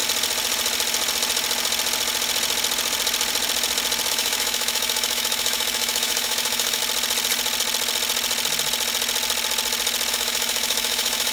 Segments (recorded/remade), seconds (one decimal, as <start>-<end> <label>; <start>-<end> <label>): 0.0-4.1 recorded; 4.1-6.8 remade; 6.8-10.1 recorded; 10.1-11.3 remade